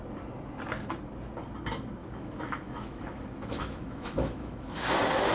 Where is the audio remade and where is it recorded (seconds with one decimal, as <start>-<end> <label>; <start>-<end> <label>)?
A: 0.0-2.0 recorded; 2.0-4.8 remade; 4.8-5.3 recorded